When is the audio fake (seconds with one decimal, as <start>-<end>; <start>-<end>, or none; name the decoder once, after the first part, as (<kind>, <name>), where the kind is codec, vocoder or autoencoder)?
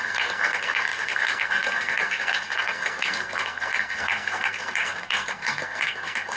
0.0-6.4 (codec, SNAC)